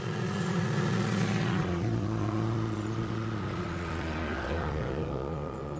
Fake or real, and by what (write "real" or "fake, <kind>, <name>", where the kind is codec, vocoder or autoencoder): fake, vocoder, Vocos